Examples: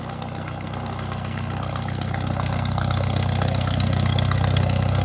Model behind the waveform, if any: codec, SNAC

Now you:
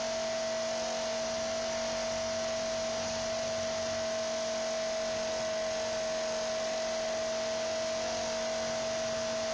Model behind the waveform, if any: none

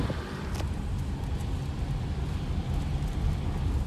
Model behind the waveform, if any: none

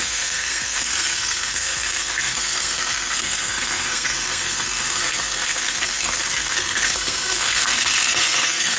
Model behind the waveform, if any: codec, SNAC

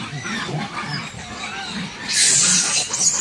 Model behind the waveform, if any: none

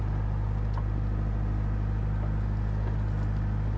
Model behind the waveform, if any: none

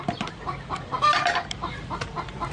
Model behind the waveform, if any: none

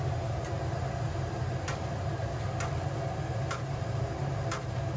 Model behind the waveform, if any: none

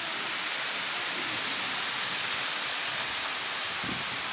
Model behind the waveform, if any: none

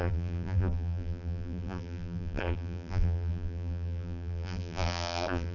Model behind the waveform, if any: vocoder, BigVGAN v2